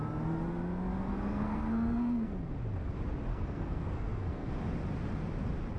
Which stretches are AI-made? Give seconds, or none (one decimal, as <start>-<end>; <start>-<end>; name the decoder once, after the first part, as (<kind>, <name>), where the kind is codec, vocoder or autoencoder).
1.1-2.5 (codec, SNAC); 3.3-4.5